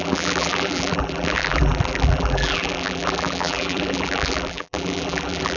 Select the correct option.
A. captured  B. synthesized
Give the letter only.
B